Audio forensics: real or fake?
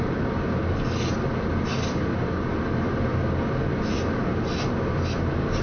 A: real